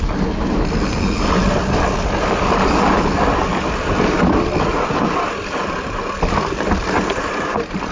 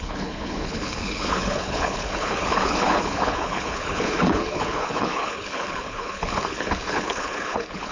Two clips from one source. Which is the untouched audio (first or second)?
first